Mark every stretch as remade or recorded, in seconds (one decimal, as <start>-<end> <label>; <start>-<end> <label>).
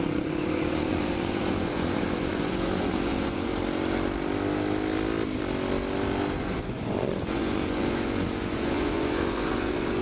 0.0-3.5 remade; 3.5-6.4 recorded; 6.4-10.0 remade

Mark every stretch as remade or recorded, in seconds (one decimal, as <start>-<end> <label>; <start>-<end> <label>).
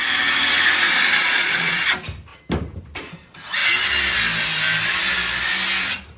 0.0-1.2 recorded; 1.2-1.8 remade; 1.8-6.2 recorded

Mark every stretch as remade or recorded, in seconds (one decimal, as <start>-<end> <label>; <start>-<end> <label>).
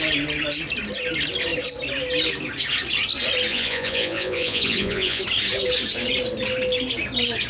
0.0-3.5 recorded; 3.5-5.2 remade; 5.2-7.5 recorded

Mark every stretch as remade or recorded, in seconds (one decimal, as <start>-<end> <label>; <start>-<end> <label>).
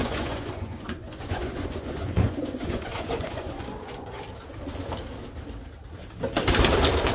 0.0-4.2 remade; 4.2-7.1 recorded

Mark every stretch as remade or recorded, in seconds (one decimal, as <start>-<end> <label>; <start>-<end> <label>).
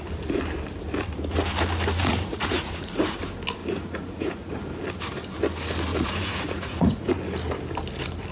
0.0-2.0 recorded; 2.0-3.2 remade; 3.2-3.6 recorded; 3.6-4.6 remade; 4.6-5.9 recorded; 5.9-7.2 remade; 7.2-8.3 recorded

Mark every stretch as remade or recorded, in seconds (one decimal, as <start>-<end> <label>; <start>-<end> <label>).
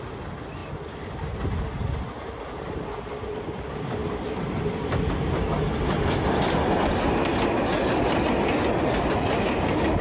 0.0-10.0 recorded